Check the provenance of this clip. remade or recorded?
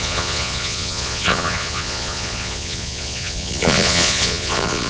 remade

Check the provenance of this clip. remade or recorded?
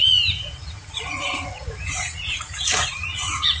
remade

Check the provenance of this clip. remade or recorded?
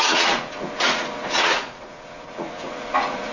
remade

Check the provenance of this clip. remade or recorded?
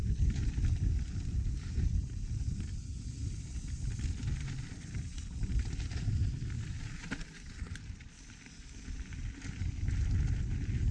recorded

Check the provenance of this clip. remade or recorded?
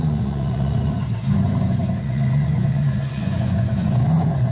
remade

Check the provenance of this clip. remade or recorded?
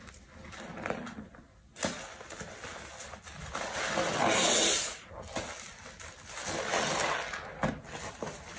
recorded